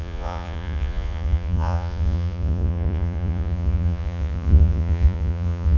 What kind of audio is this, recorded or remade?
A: remade